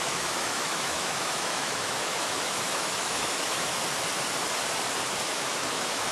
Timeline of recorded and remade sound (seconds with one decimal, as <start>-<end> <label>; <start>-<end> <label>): 0.0-3.8 remade; 3.8-5.3 recorded; 5.3-6.1 remade